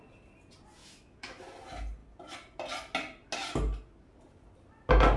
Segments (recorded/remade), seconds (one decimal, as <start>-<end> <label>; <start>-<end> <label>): 0.0-0.8 recorded; 0.8-1.4 remade; 1.4-5.2 recorded